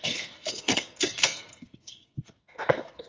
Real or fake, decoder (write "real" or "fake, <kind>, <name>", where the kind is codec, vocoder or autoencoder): fake, codec, SNAC